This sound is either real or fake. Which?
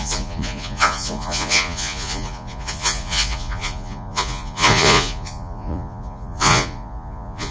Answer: fake